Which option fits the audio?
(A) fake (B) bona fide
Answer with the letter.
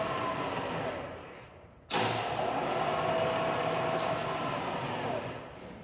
B